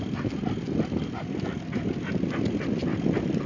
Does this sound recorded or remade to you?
recorded